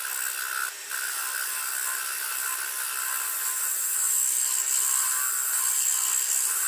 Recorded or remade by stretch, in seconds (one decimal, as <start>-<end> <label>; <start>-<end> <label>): 0.0-0.6 recorded; 0.6-4.6 remade; 4.6-6.7 recorded